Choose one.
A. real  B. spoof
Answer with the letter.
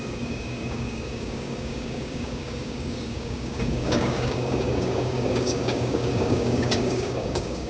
B